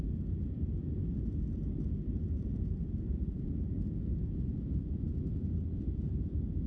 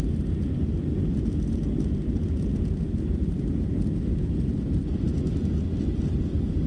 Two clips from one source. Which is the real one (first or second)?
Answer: second